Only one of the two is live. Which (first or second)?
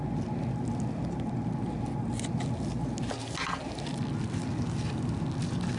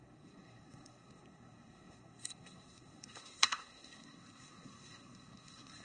first